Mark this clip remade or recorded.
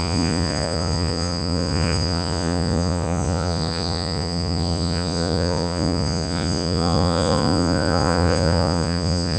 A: remade